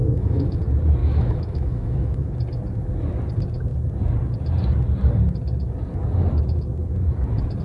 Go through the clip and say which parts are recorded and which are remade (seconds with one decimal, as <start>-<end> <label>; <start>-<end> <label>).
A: 0.0-0.6 remade; 0.6-1.0 recorded; 1.0-2.3 remade; 2.3-7.6 recorded